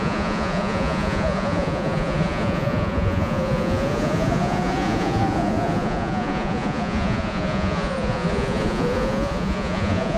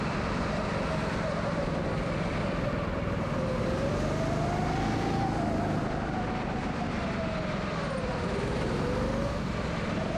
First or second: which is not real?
first